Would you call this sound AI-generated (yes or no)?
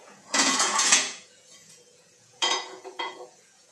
yes